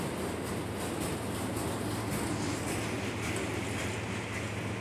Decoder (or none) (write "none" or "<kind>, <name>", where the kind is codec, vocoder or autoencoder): none